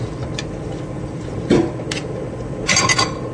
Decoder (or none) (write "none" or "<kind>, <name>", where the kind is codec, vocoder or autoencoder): none